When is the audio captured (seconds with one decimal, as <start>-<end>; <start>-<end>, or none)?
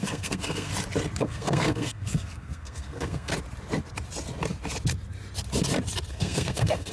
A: 0.7-1.2; 3.3-6.1